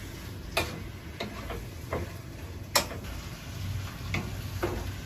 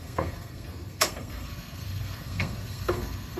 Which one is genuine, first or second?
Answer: first